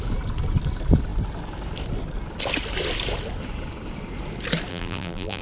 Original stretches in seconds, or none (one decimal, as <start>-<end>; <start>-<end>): 0.0-4.7